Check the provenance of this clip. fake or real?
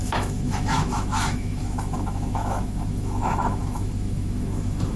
fake